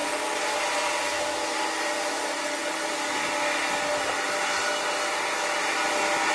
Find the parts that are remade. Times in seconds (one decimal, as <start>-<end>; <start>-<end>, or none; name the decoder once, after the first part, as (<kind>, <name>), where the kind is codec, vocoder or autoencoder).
none